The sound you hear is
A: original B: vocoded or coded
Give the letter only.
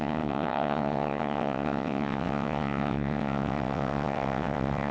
B